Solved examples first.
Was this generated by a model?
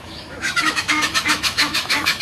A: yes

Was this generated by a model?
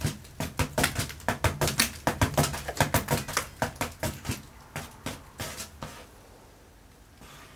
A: no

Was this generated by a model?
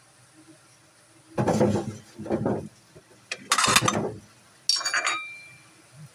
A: no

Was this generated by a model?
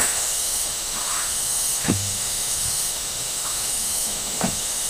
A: yes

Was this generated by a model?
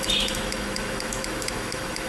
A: yes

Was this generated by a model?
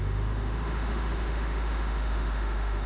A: yes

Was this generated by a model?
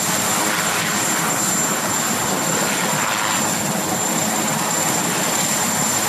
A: no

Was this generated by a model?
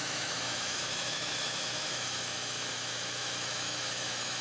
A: yes